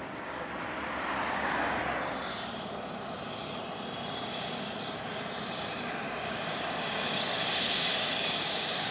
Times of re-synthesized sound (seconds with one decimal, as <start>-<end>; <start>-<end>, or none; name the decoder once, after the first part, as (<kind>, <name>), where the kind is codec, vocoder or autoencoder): 0.0-0.5 (codec, DAC); 1.3-1.8; 5.8-8.9